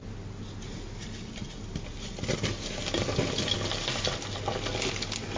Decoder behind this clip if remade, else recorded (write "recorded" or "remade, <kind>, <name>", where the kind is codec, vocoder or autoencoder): recorded